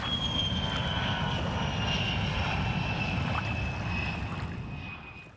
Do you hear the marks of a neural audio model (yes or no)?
no